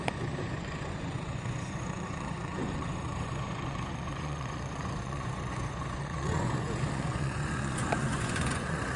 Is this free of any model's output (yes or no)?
no